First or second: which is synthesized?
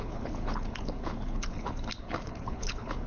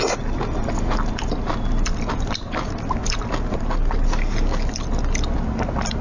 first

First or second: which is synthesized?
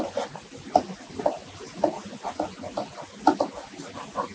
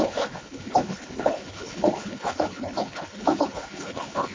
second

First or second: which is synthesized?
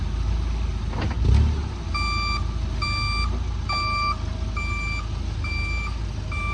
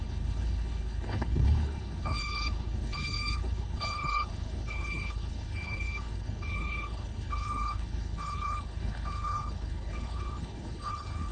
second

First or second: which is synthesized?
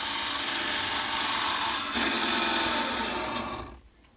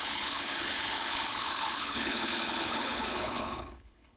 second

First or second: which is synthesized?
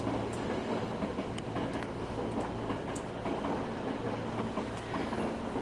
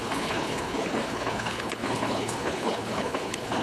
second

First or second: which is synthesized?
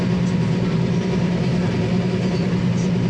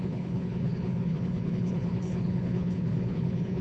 second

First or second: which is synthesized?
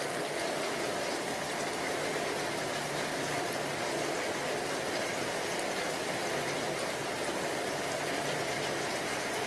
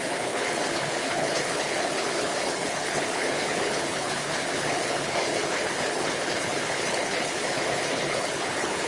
second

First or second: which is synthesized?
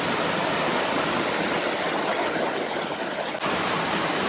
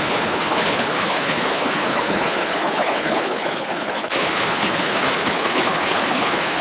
second